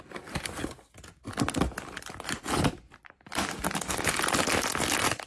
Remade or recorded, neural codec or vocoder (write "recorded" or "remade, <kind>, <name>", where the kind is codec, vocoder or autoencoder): recorded